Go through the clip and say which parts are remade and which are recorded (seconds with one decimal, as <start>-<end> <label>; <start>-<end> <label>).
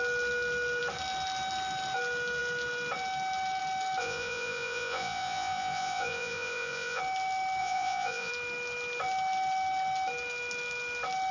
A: 0.0-4.0 recorded; 4.0-7.0 remade; 7.0-7.6 recorded; 7.6-8.3 remade; 8.3-11.3 recorded